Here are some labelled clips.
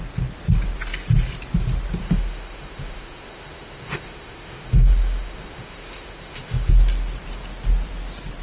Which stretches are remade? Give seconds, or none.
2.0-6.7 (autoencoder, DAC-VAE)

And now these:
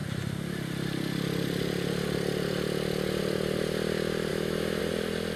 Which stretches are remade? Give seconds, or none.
4.3-4.8 (autoencoder, DAC-VAE)

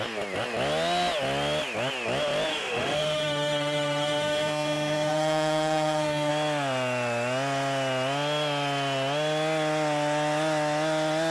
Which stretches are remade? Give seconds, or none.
2.5-6.3 (autoencoder, DAC-VAE)

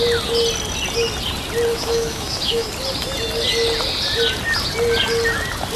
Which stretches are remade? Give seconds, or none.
1.7-2.7 (autoencoder, DAC-VAE)

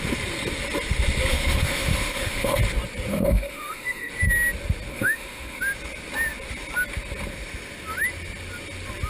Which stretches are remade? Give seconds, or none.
1.3-2.6 (autoencoder, DAC-VAE); 3.1-4.1; 4.9-5.6

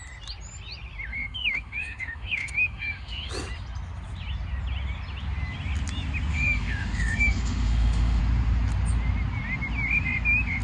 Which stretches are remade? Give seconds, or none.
1.1-3.3 (autoencoder, DAC-VAE); 6.3-8.2